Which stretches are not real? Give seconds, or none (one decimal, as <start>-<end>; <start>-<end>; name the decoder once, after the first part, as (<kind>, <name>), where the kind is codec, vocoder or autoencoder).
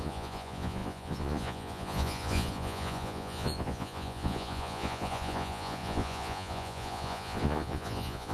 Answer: 0.0-8.3 (vocoder, Vocos)